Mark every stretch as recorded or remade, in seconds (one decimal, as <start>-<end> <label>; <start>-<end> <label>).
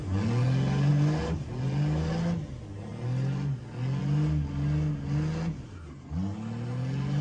0.0-7.2 recorded